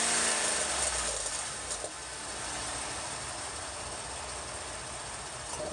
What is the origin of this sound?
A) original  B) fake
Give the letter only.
A